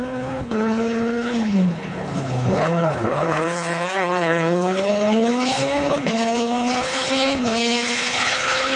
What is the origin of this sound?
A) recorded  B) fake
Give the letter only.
B